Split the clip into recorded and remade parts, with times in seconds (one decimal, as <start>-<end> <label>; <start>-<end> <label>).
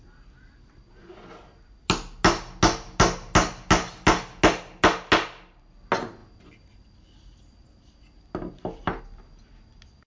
0.0-10.1 recorded